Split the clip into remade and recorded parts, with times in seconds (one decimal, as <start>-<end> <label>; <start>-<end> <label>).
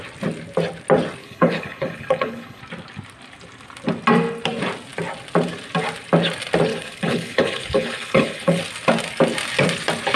0.0-1.2 recorded; 1.2-2.6 remade; 2.6-6.7 recorded; 6.7-8.6 remade; 8.6-10.2 recorded